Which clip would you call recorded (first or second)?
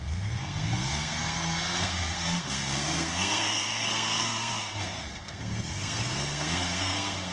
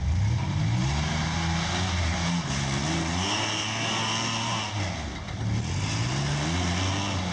second